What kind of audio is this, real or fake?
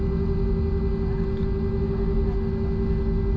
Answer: real